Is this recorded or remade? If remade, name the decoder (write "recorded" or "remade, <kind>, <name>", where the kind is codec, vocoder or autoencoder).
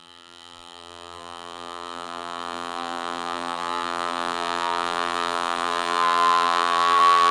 remade, vocoder, BigVGAN v2